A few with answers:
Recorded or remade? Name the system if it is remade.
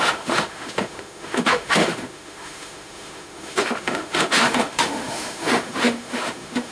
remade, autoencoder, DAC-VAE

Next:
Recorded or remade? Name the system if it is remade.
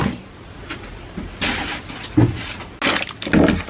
recorded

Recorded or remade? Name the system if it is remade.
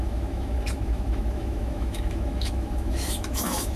remade, autoencoder, DAC-VAE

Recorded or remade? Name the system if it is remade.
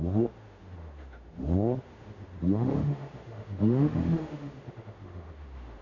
remade, autoencoder, DAC-VAE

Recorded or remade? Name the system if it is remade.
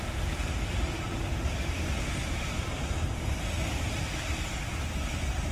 recorded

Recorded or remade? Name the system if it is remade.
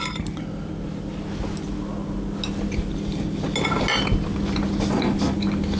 recorded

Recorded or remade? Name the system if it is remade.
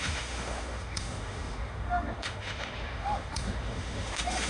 remade, autoencoder, DAC-VAE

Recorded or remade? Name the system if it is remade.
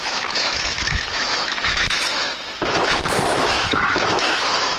remade, autoencoder, DAC-VAE